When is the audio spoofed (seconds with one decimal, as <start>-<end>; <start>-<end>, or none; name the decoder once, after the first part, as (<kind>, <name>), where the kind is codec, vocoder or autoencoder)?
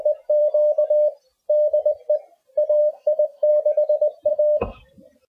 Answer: 2.8-3.5 (autoencoder, DAC-VAE); 4.3-4.8